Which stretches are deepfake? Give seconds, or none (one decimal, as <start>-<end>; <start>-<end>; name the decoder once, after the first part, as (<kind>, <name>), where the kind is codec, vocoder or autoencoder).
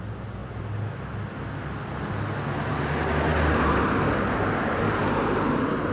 none